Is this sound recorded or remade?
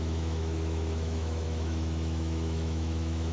remade